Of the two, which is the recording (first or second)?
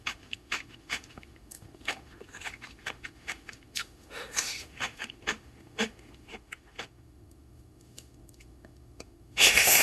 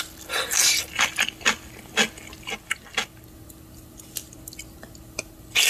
second